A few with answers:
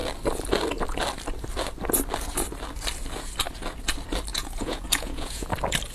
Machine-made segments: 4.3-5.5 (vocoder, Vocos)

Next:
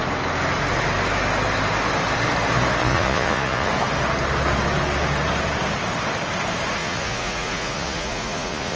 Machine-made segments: 2.8-3.7 (vocoder, Vocos); 6.8-8.8

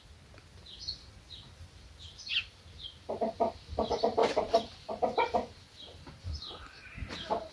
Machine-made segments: none

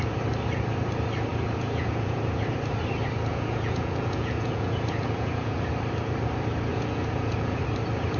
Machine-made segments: 1.3-2.5 (vocoder, Vocos); 3.3-5.7; 6.7-7.6

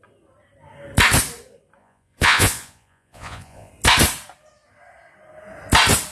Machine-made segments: 1.8-3.7 (vocoder, Vocos)

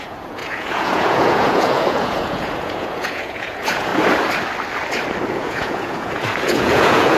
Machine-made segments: 0.0-3.9 (vocoder, Vocos); 5.3-7.2